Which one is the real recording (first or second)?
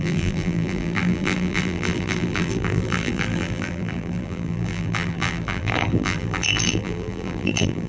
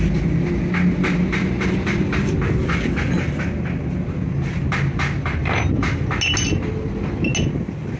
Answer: second